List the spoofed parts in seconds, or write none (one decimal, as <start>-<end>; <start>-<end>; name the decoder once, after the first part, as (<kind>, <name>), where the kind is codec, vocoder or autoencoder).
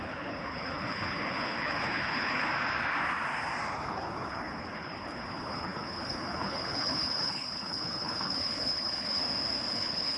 0.0-2.5 (codec, HILCodec); 3.7-9.2; 9.7-10.2